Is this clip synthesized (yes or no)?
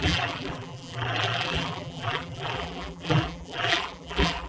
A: yes